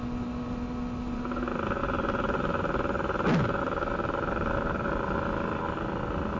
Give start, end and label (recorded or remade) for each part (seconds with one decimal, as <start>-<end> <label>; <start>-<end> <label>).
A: 0.0-6.4 recorded